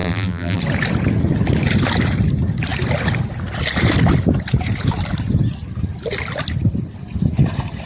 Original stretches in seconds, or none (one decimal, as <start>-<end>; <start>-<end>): 0.6-7.9